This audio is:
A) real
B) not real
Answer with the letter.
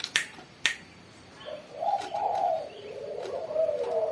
B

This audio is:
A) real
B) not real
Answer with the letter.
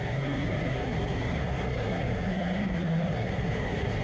B